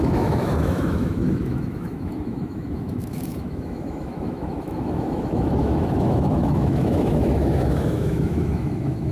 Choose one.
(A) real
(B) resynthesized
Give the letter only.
B